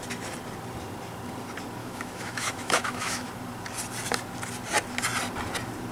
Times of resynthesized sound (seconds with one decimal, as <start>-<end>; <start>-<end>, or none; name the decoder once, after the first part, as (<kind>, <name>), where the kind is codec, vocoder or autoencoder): 1.8-3.3 (autoencoder, DAC-VAE)